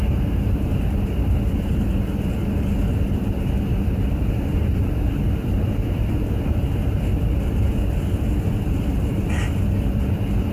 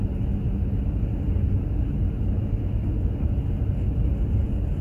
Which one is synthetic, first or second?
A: first